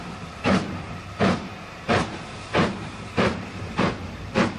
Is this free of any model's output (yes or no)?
no